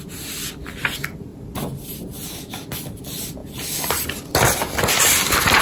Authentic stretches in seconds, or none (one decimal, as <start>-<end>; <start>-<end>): 0.0-5.6